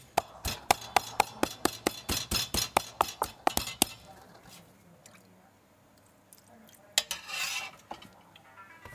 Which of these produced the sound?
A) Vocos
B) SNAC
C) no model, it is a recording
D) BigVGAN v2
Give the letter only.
C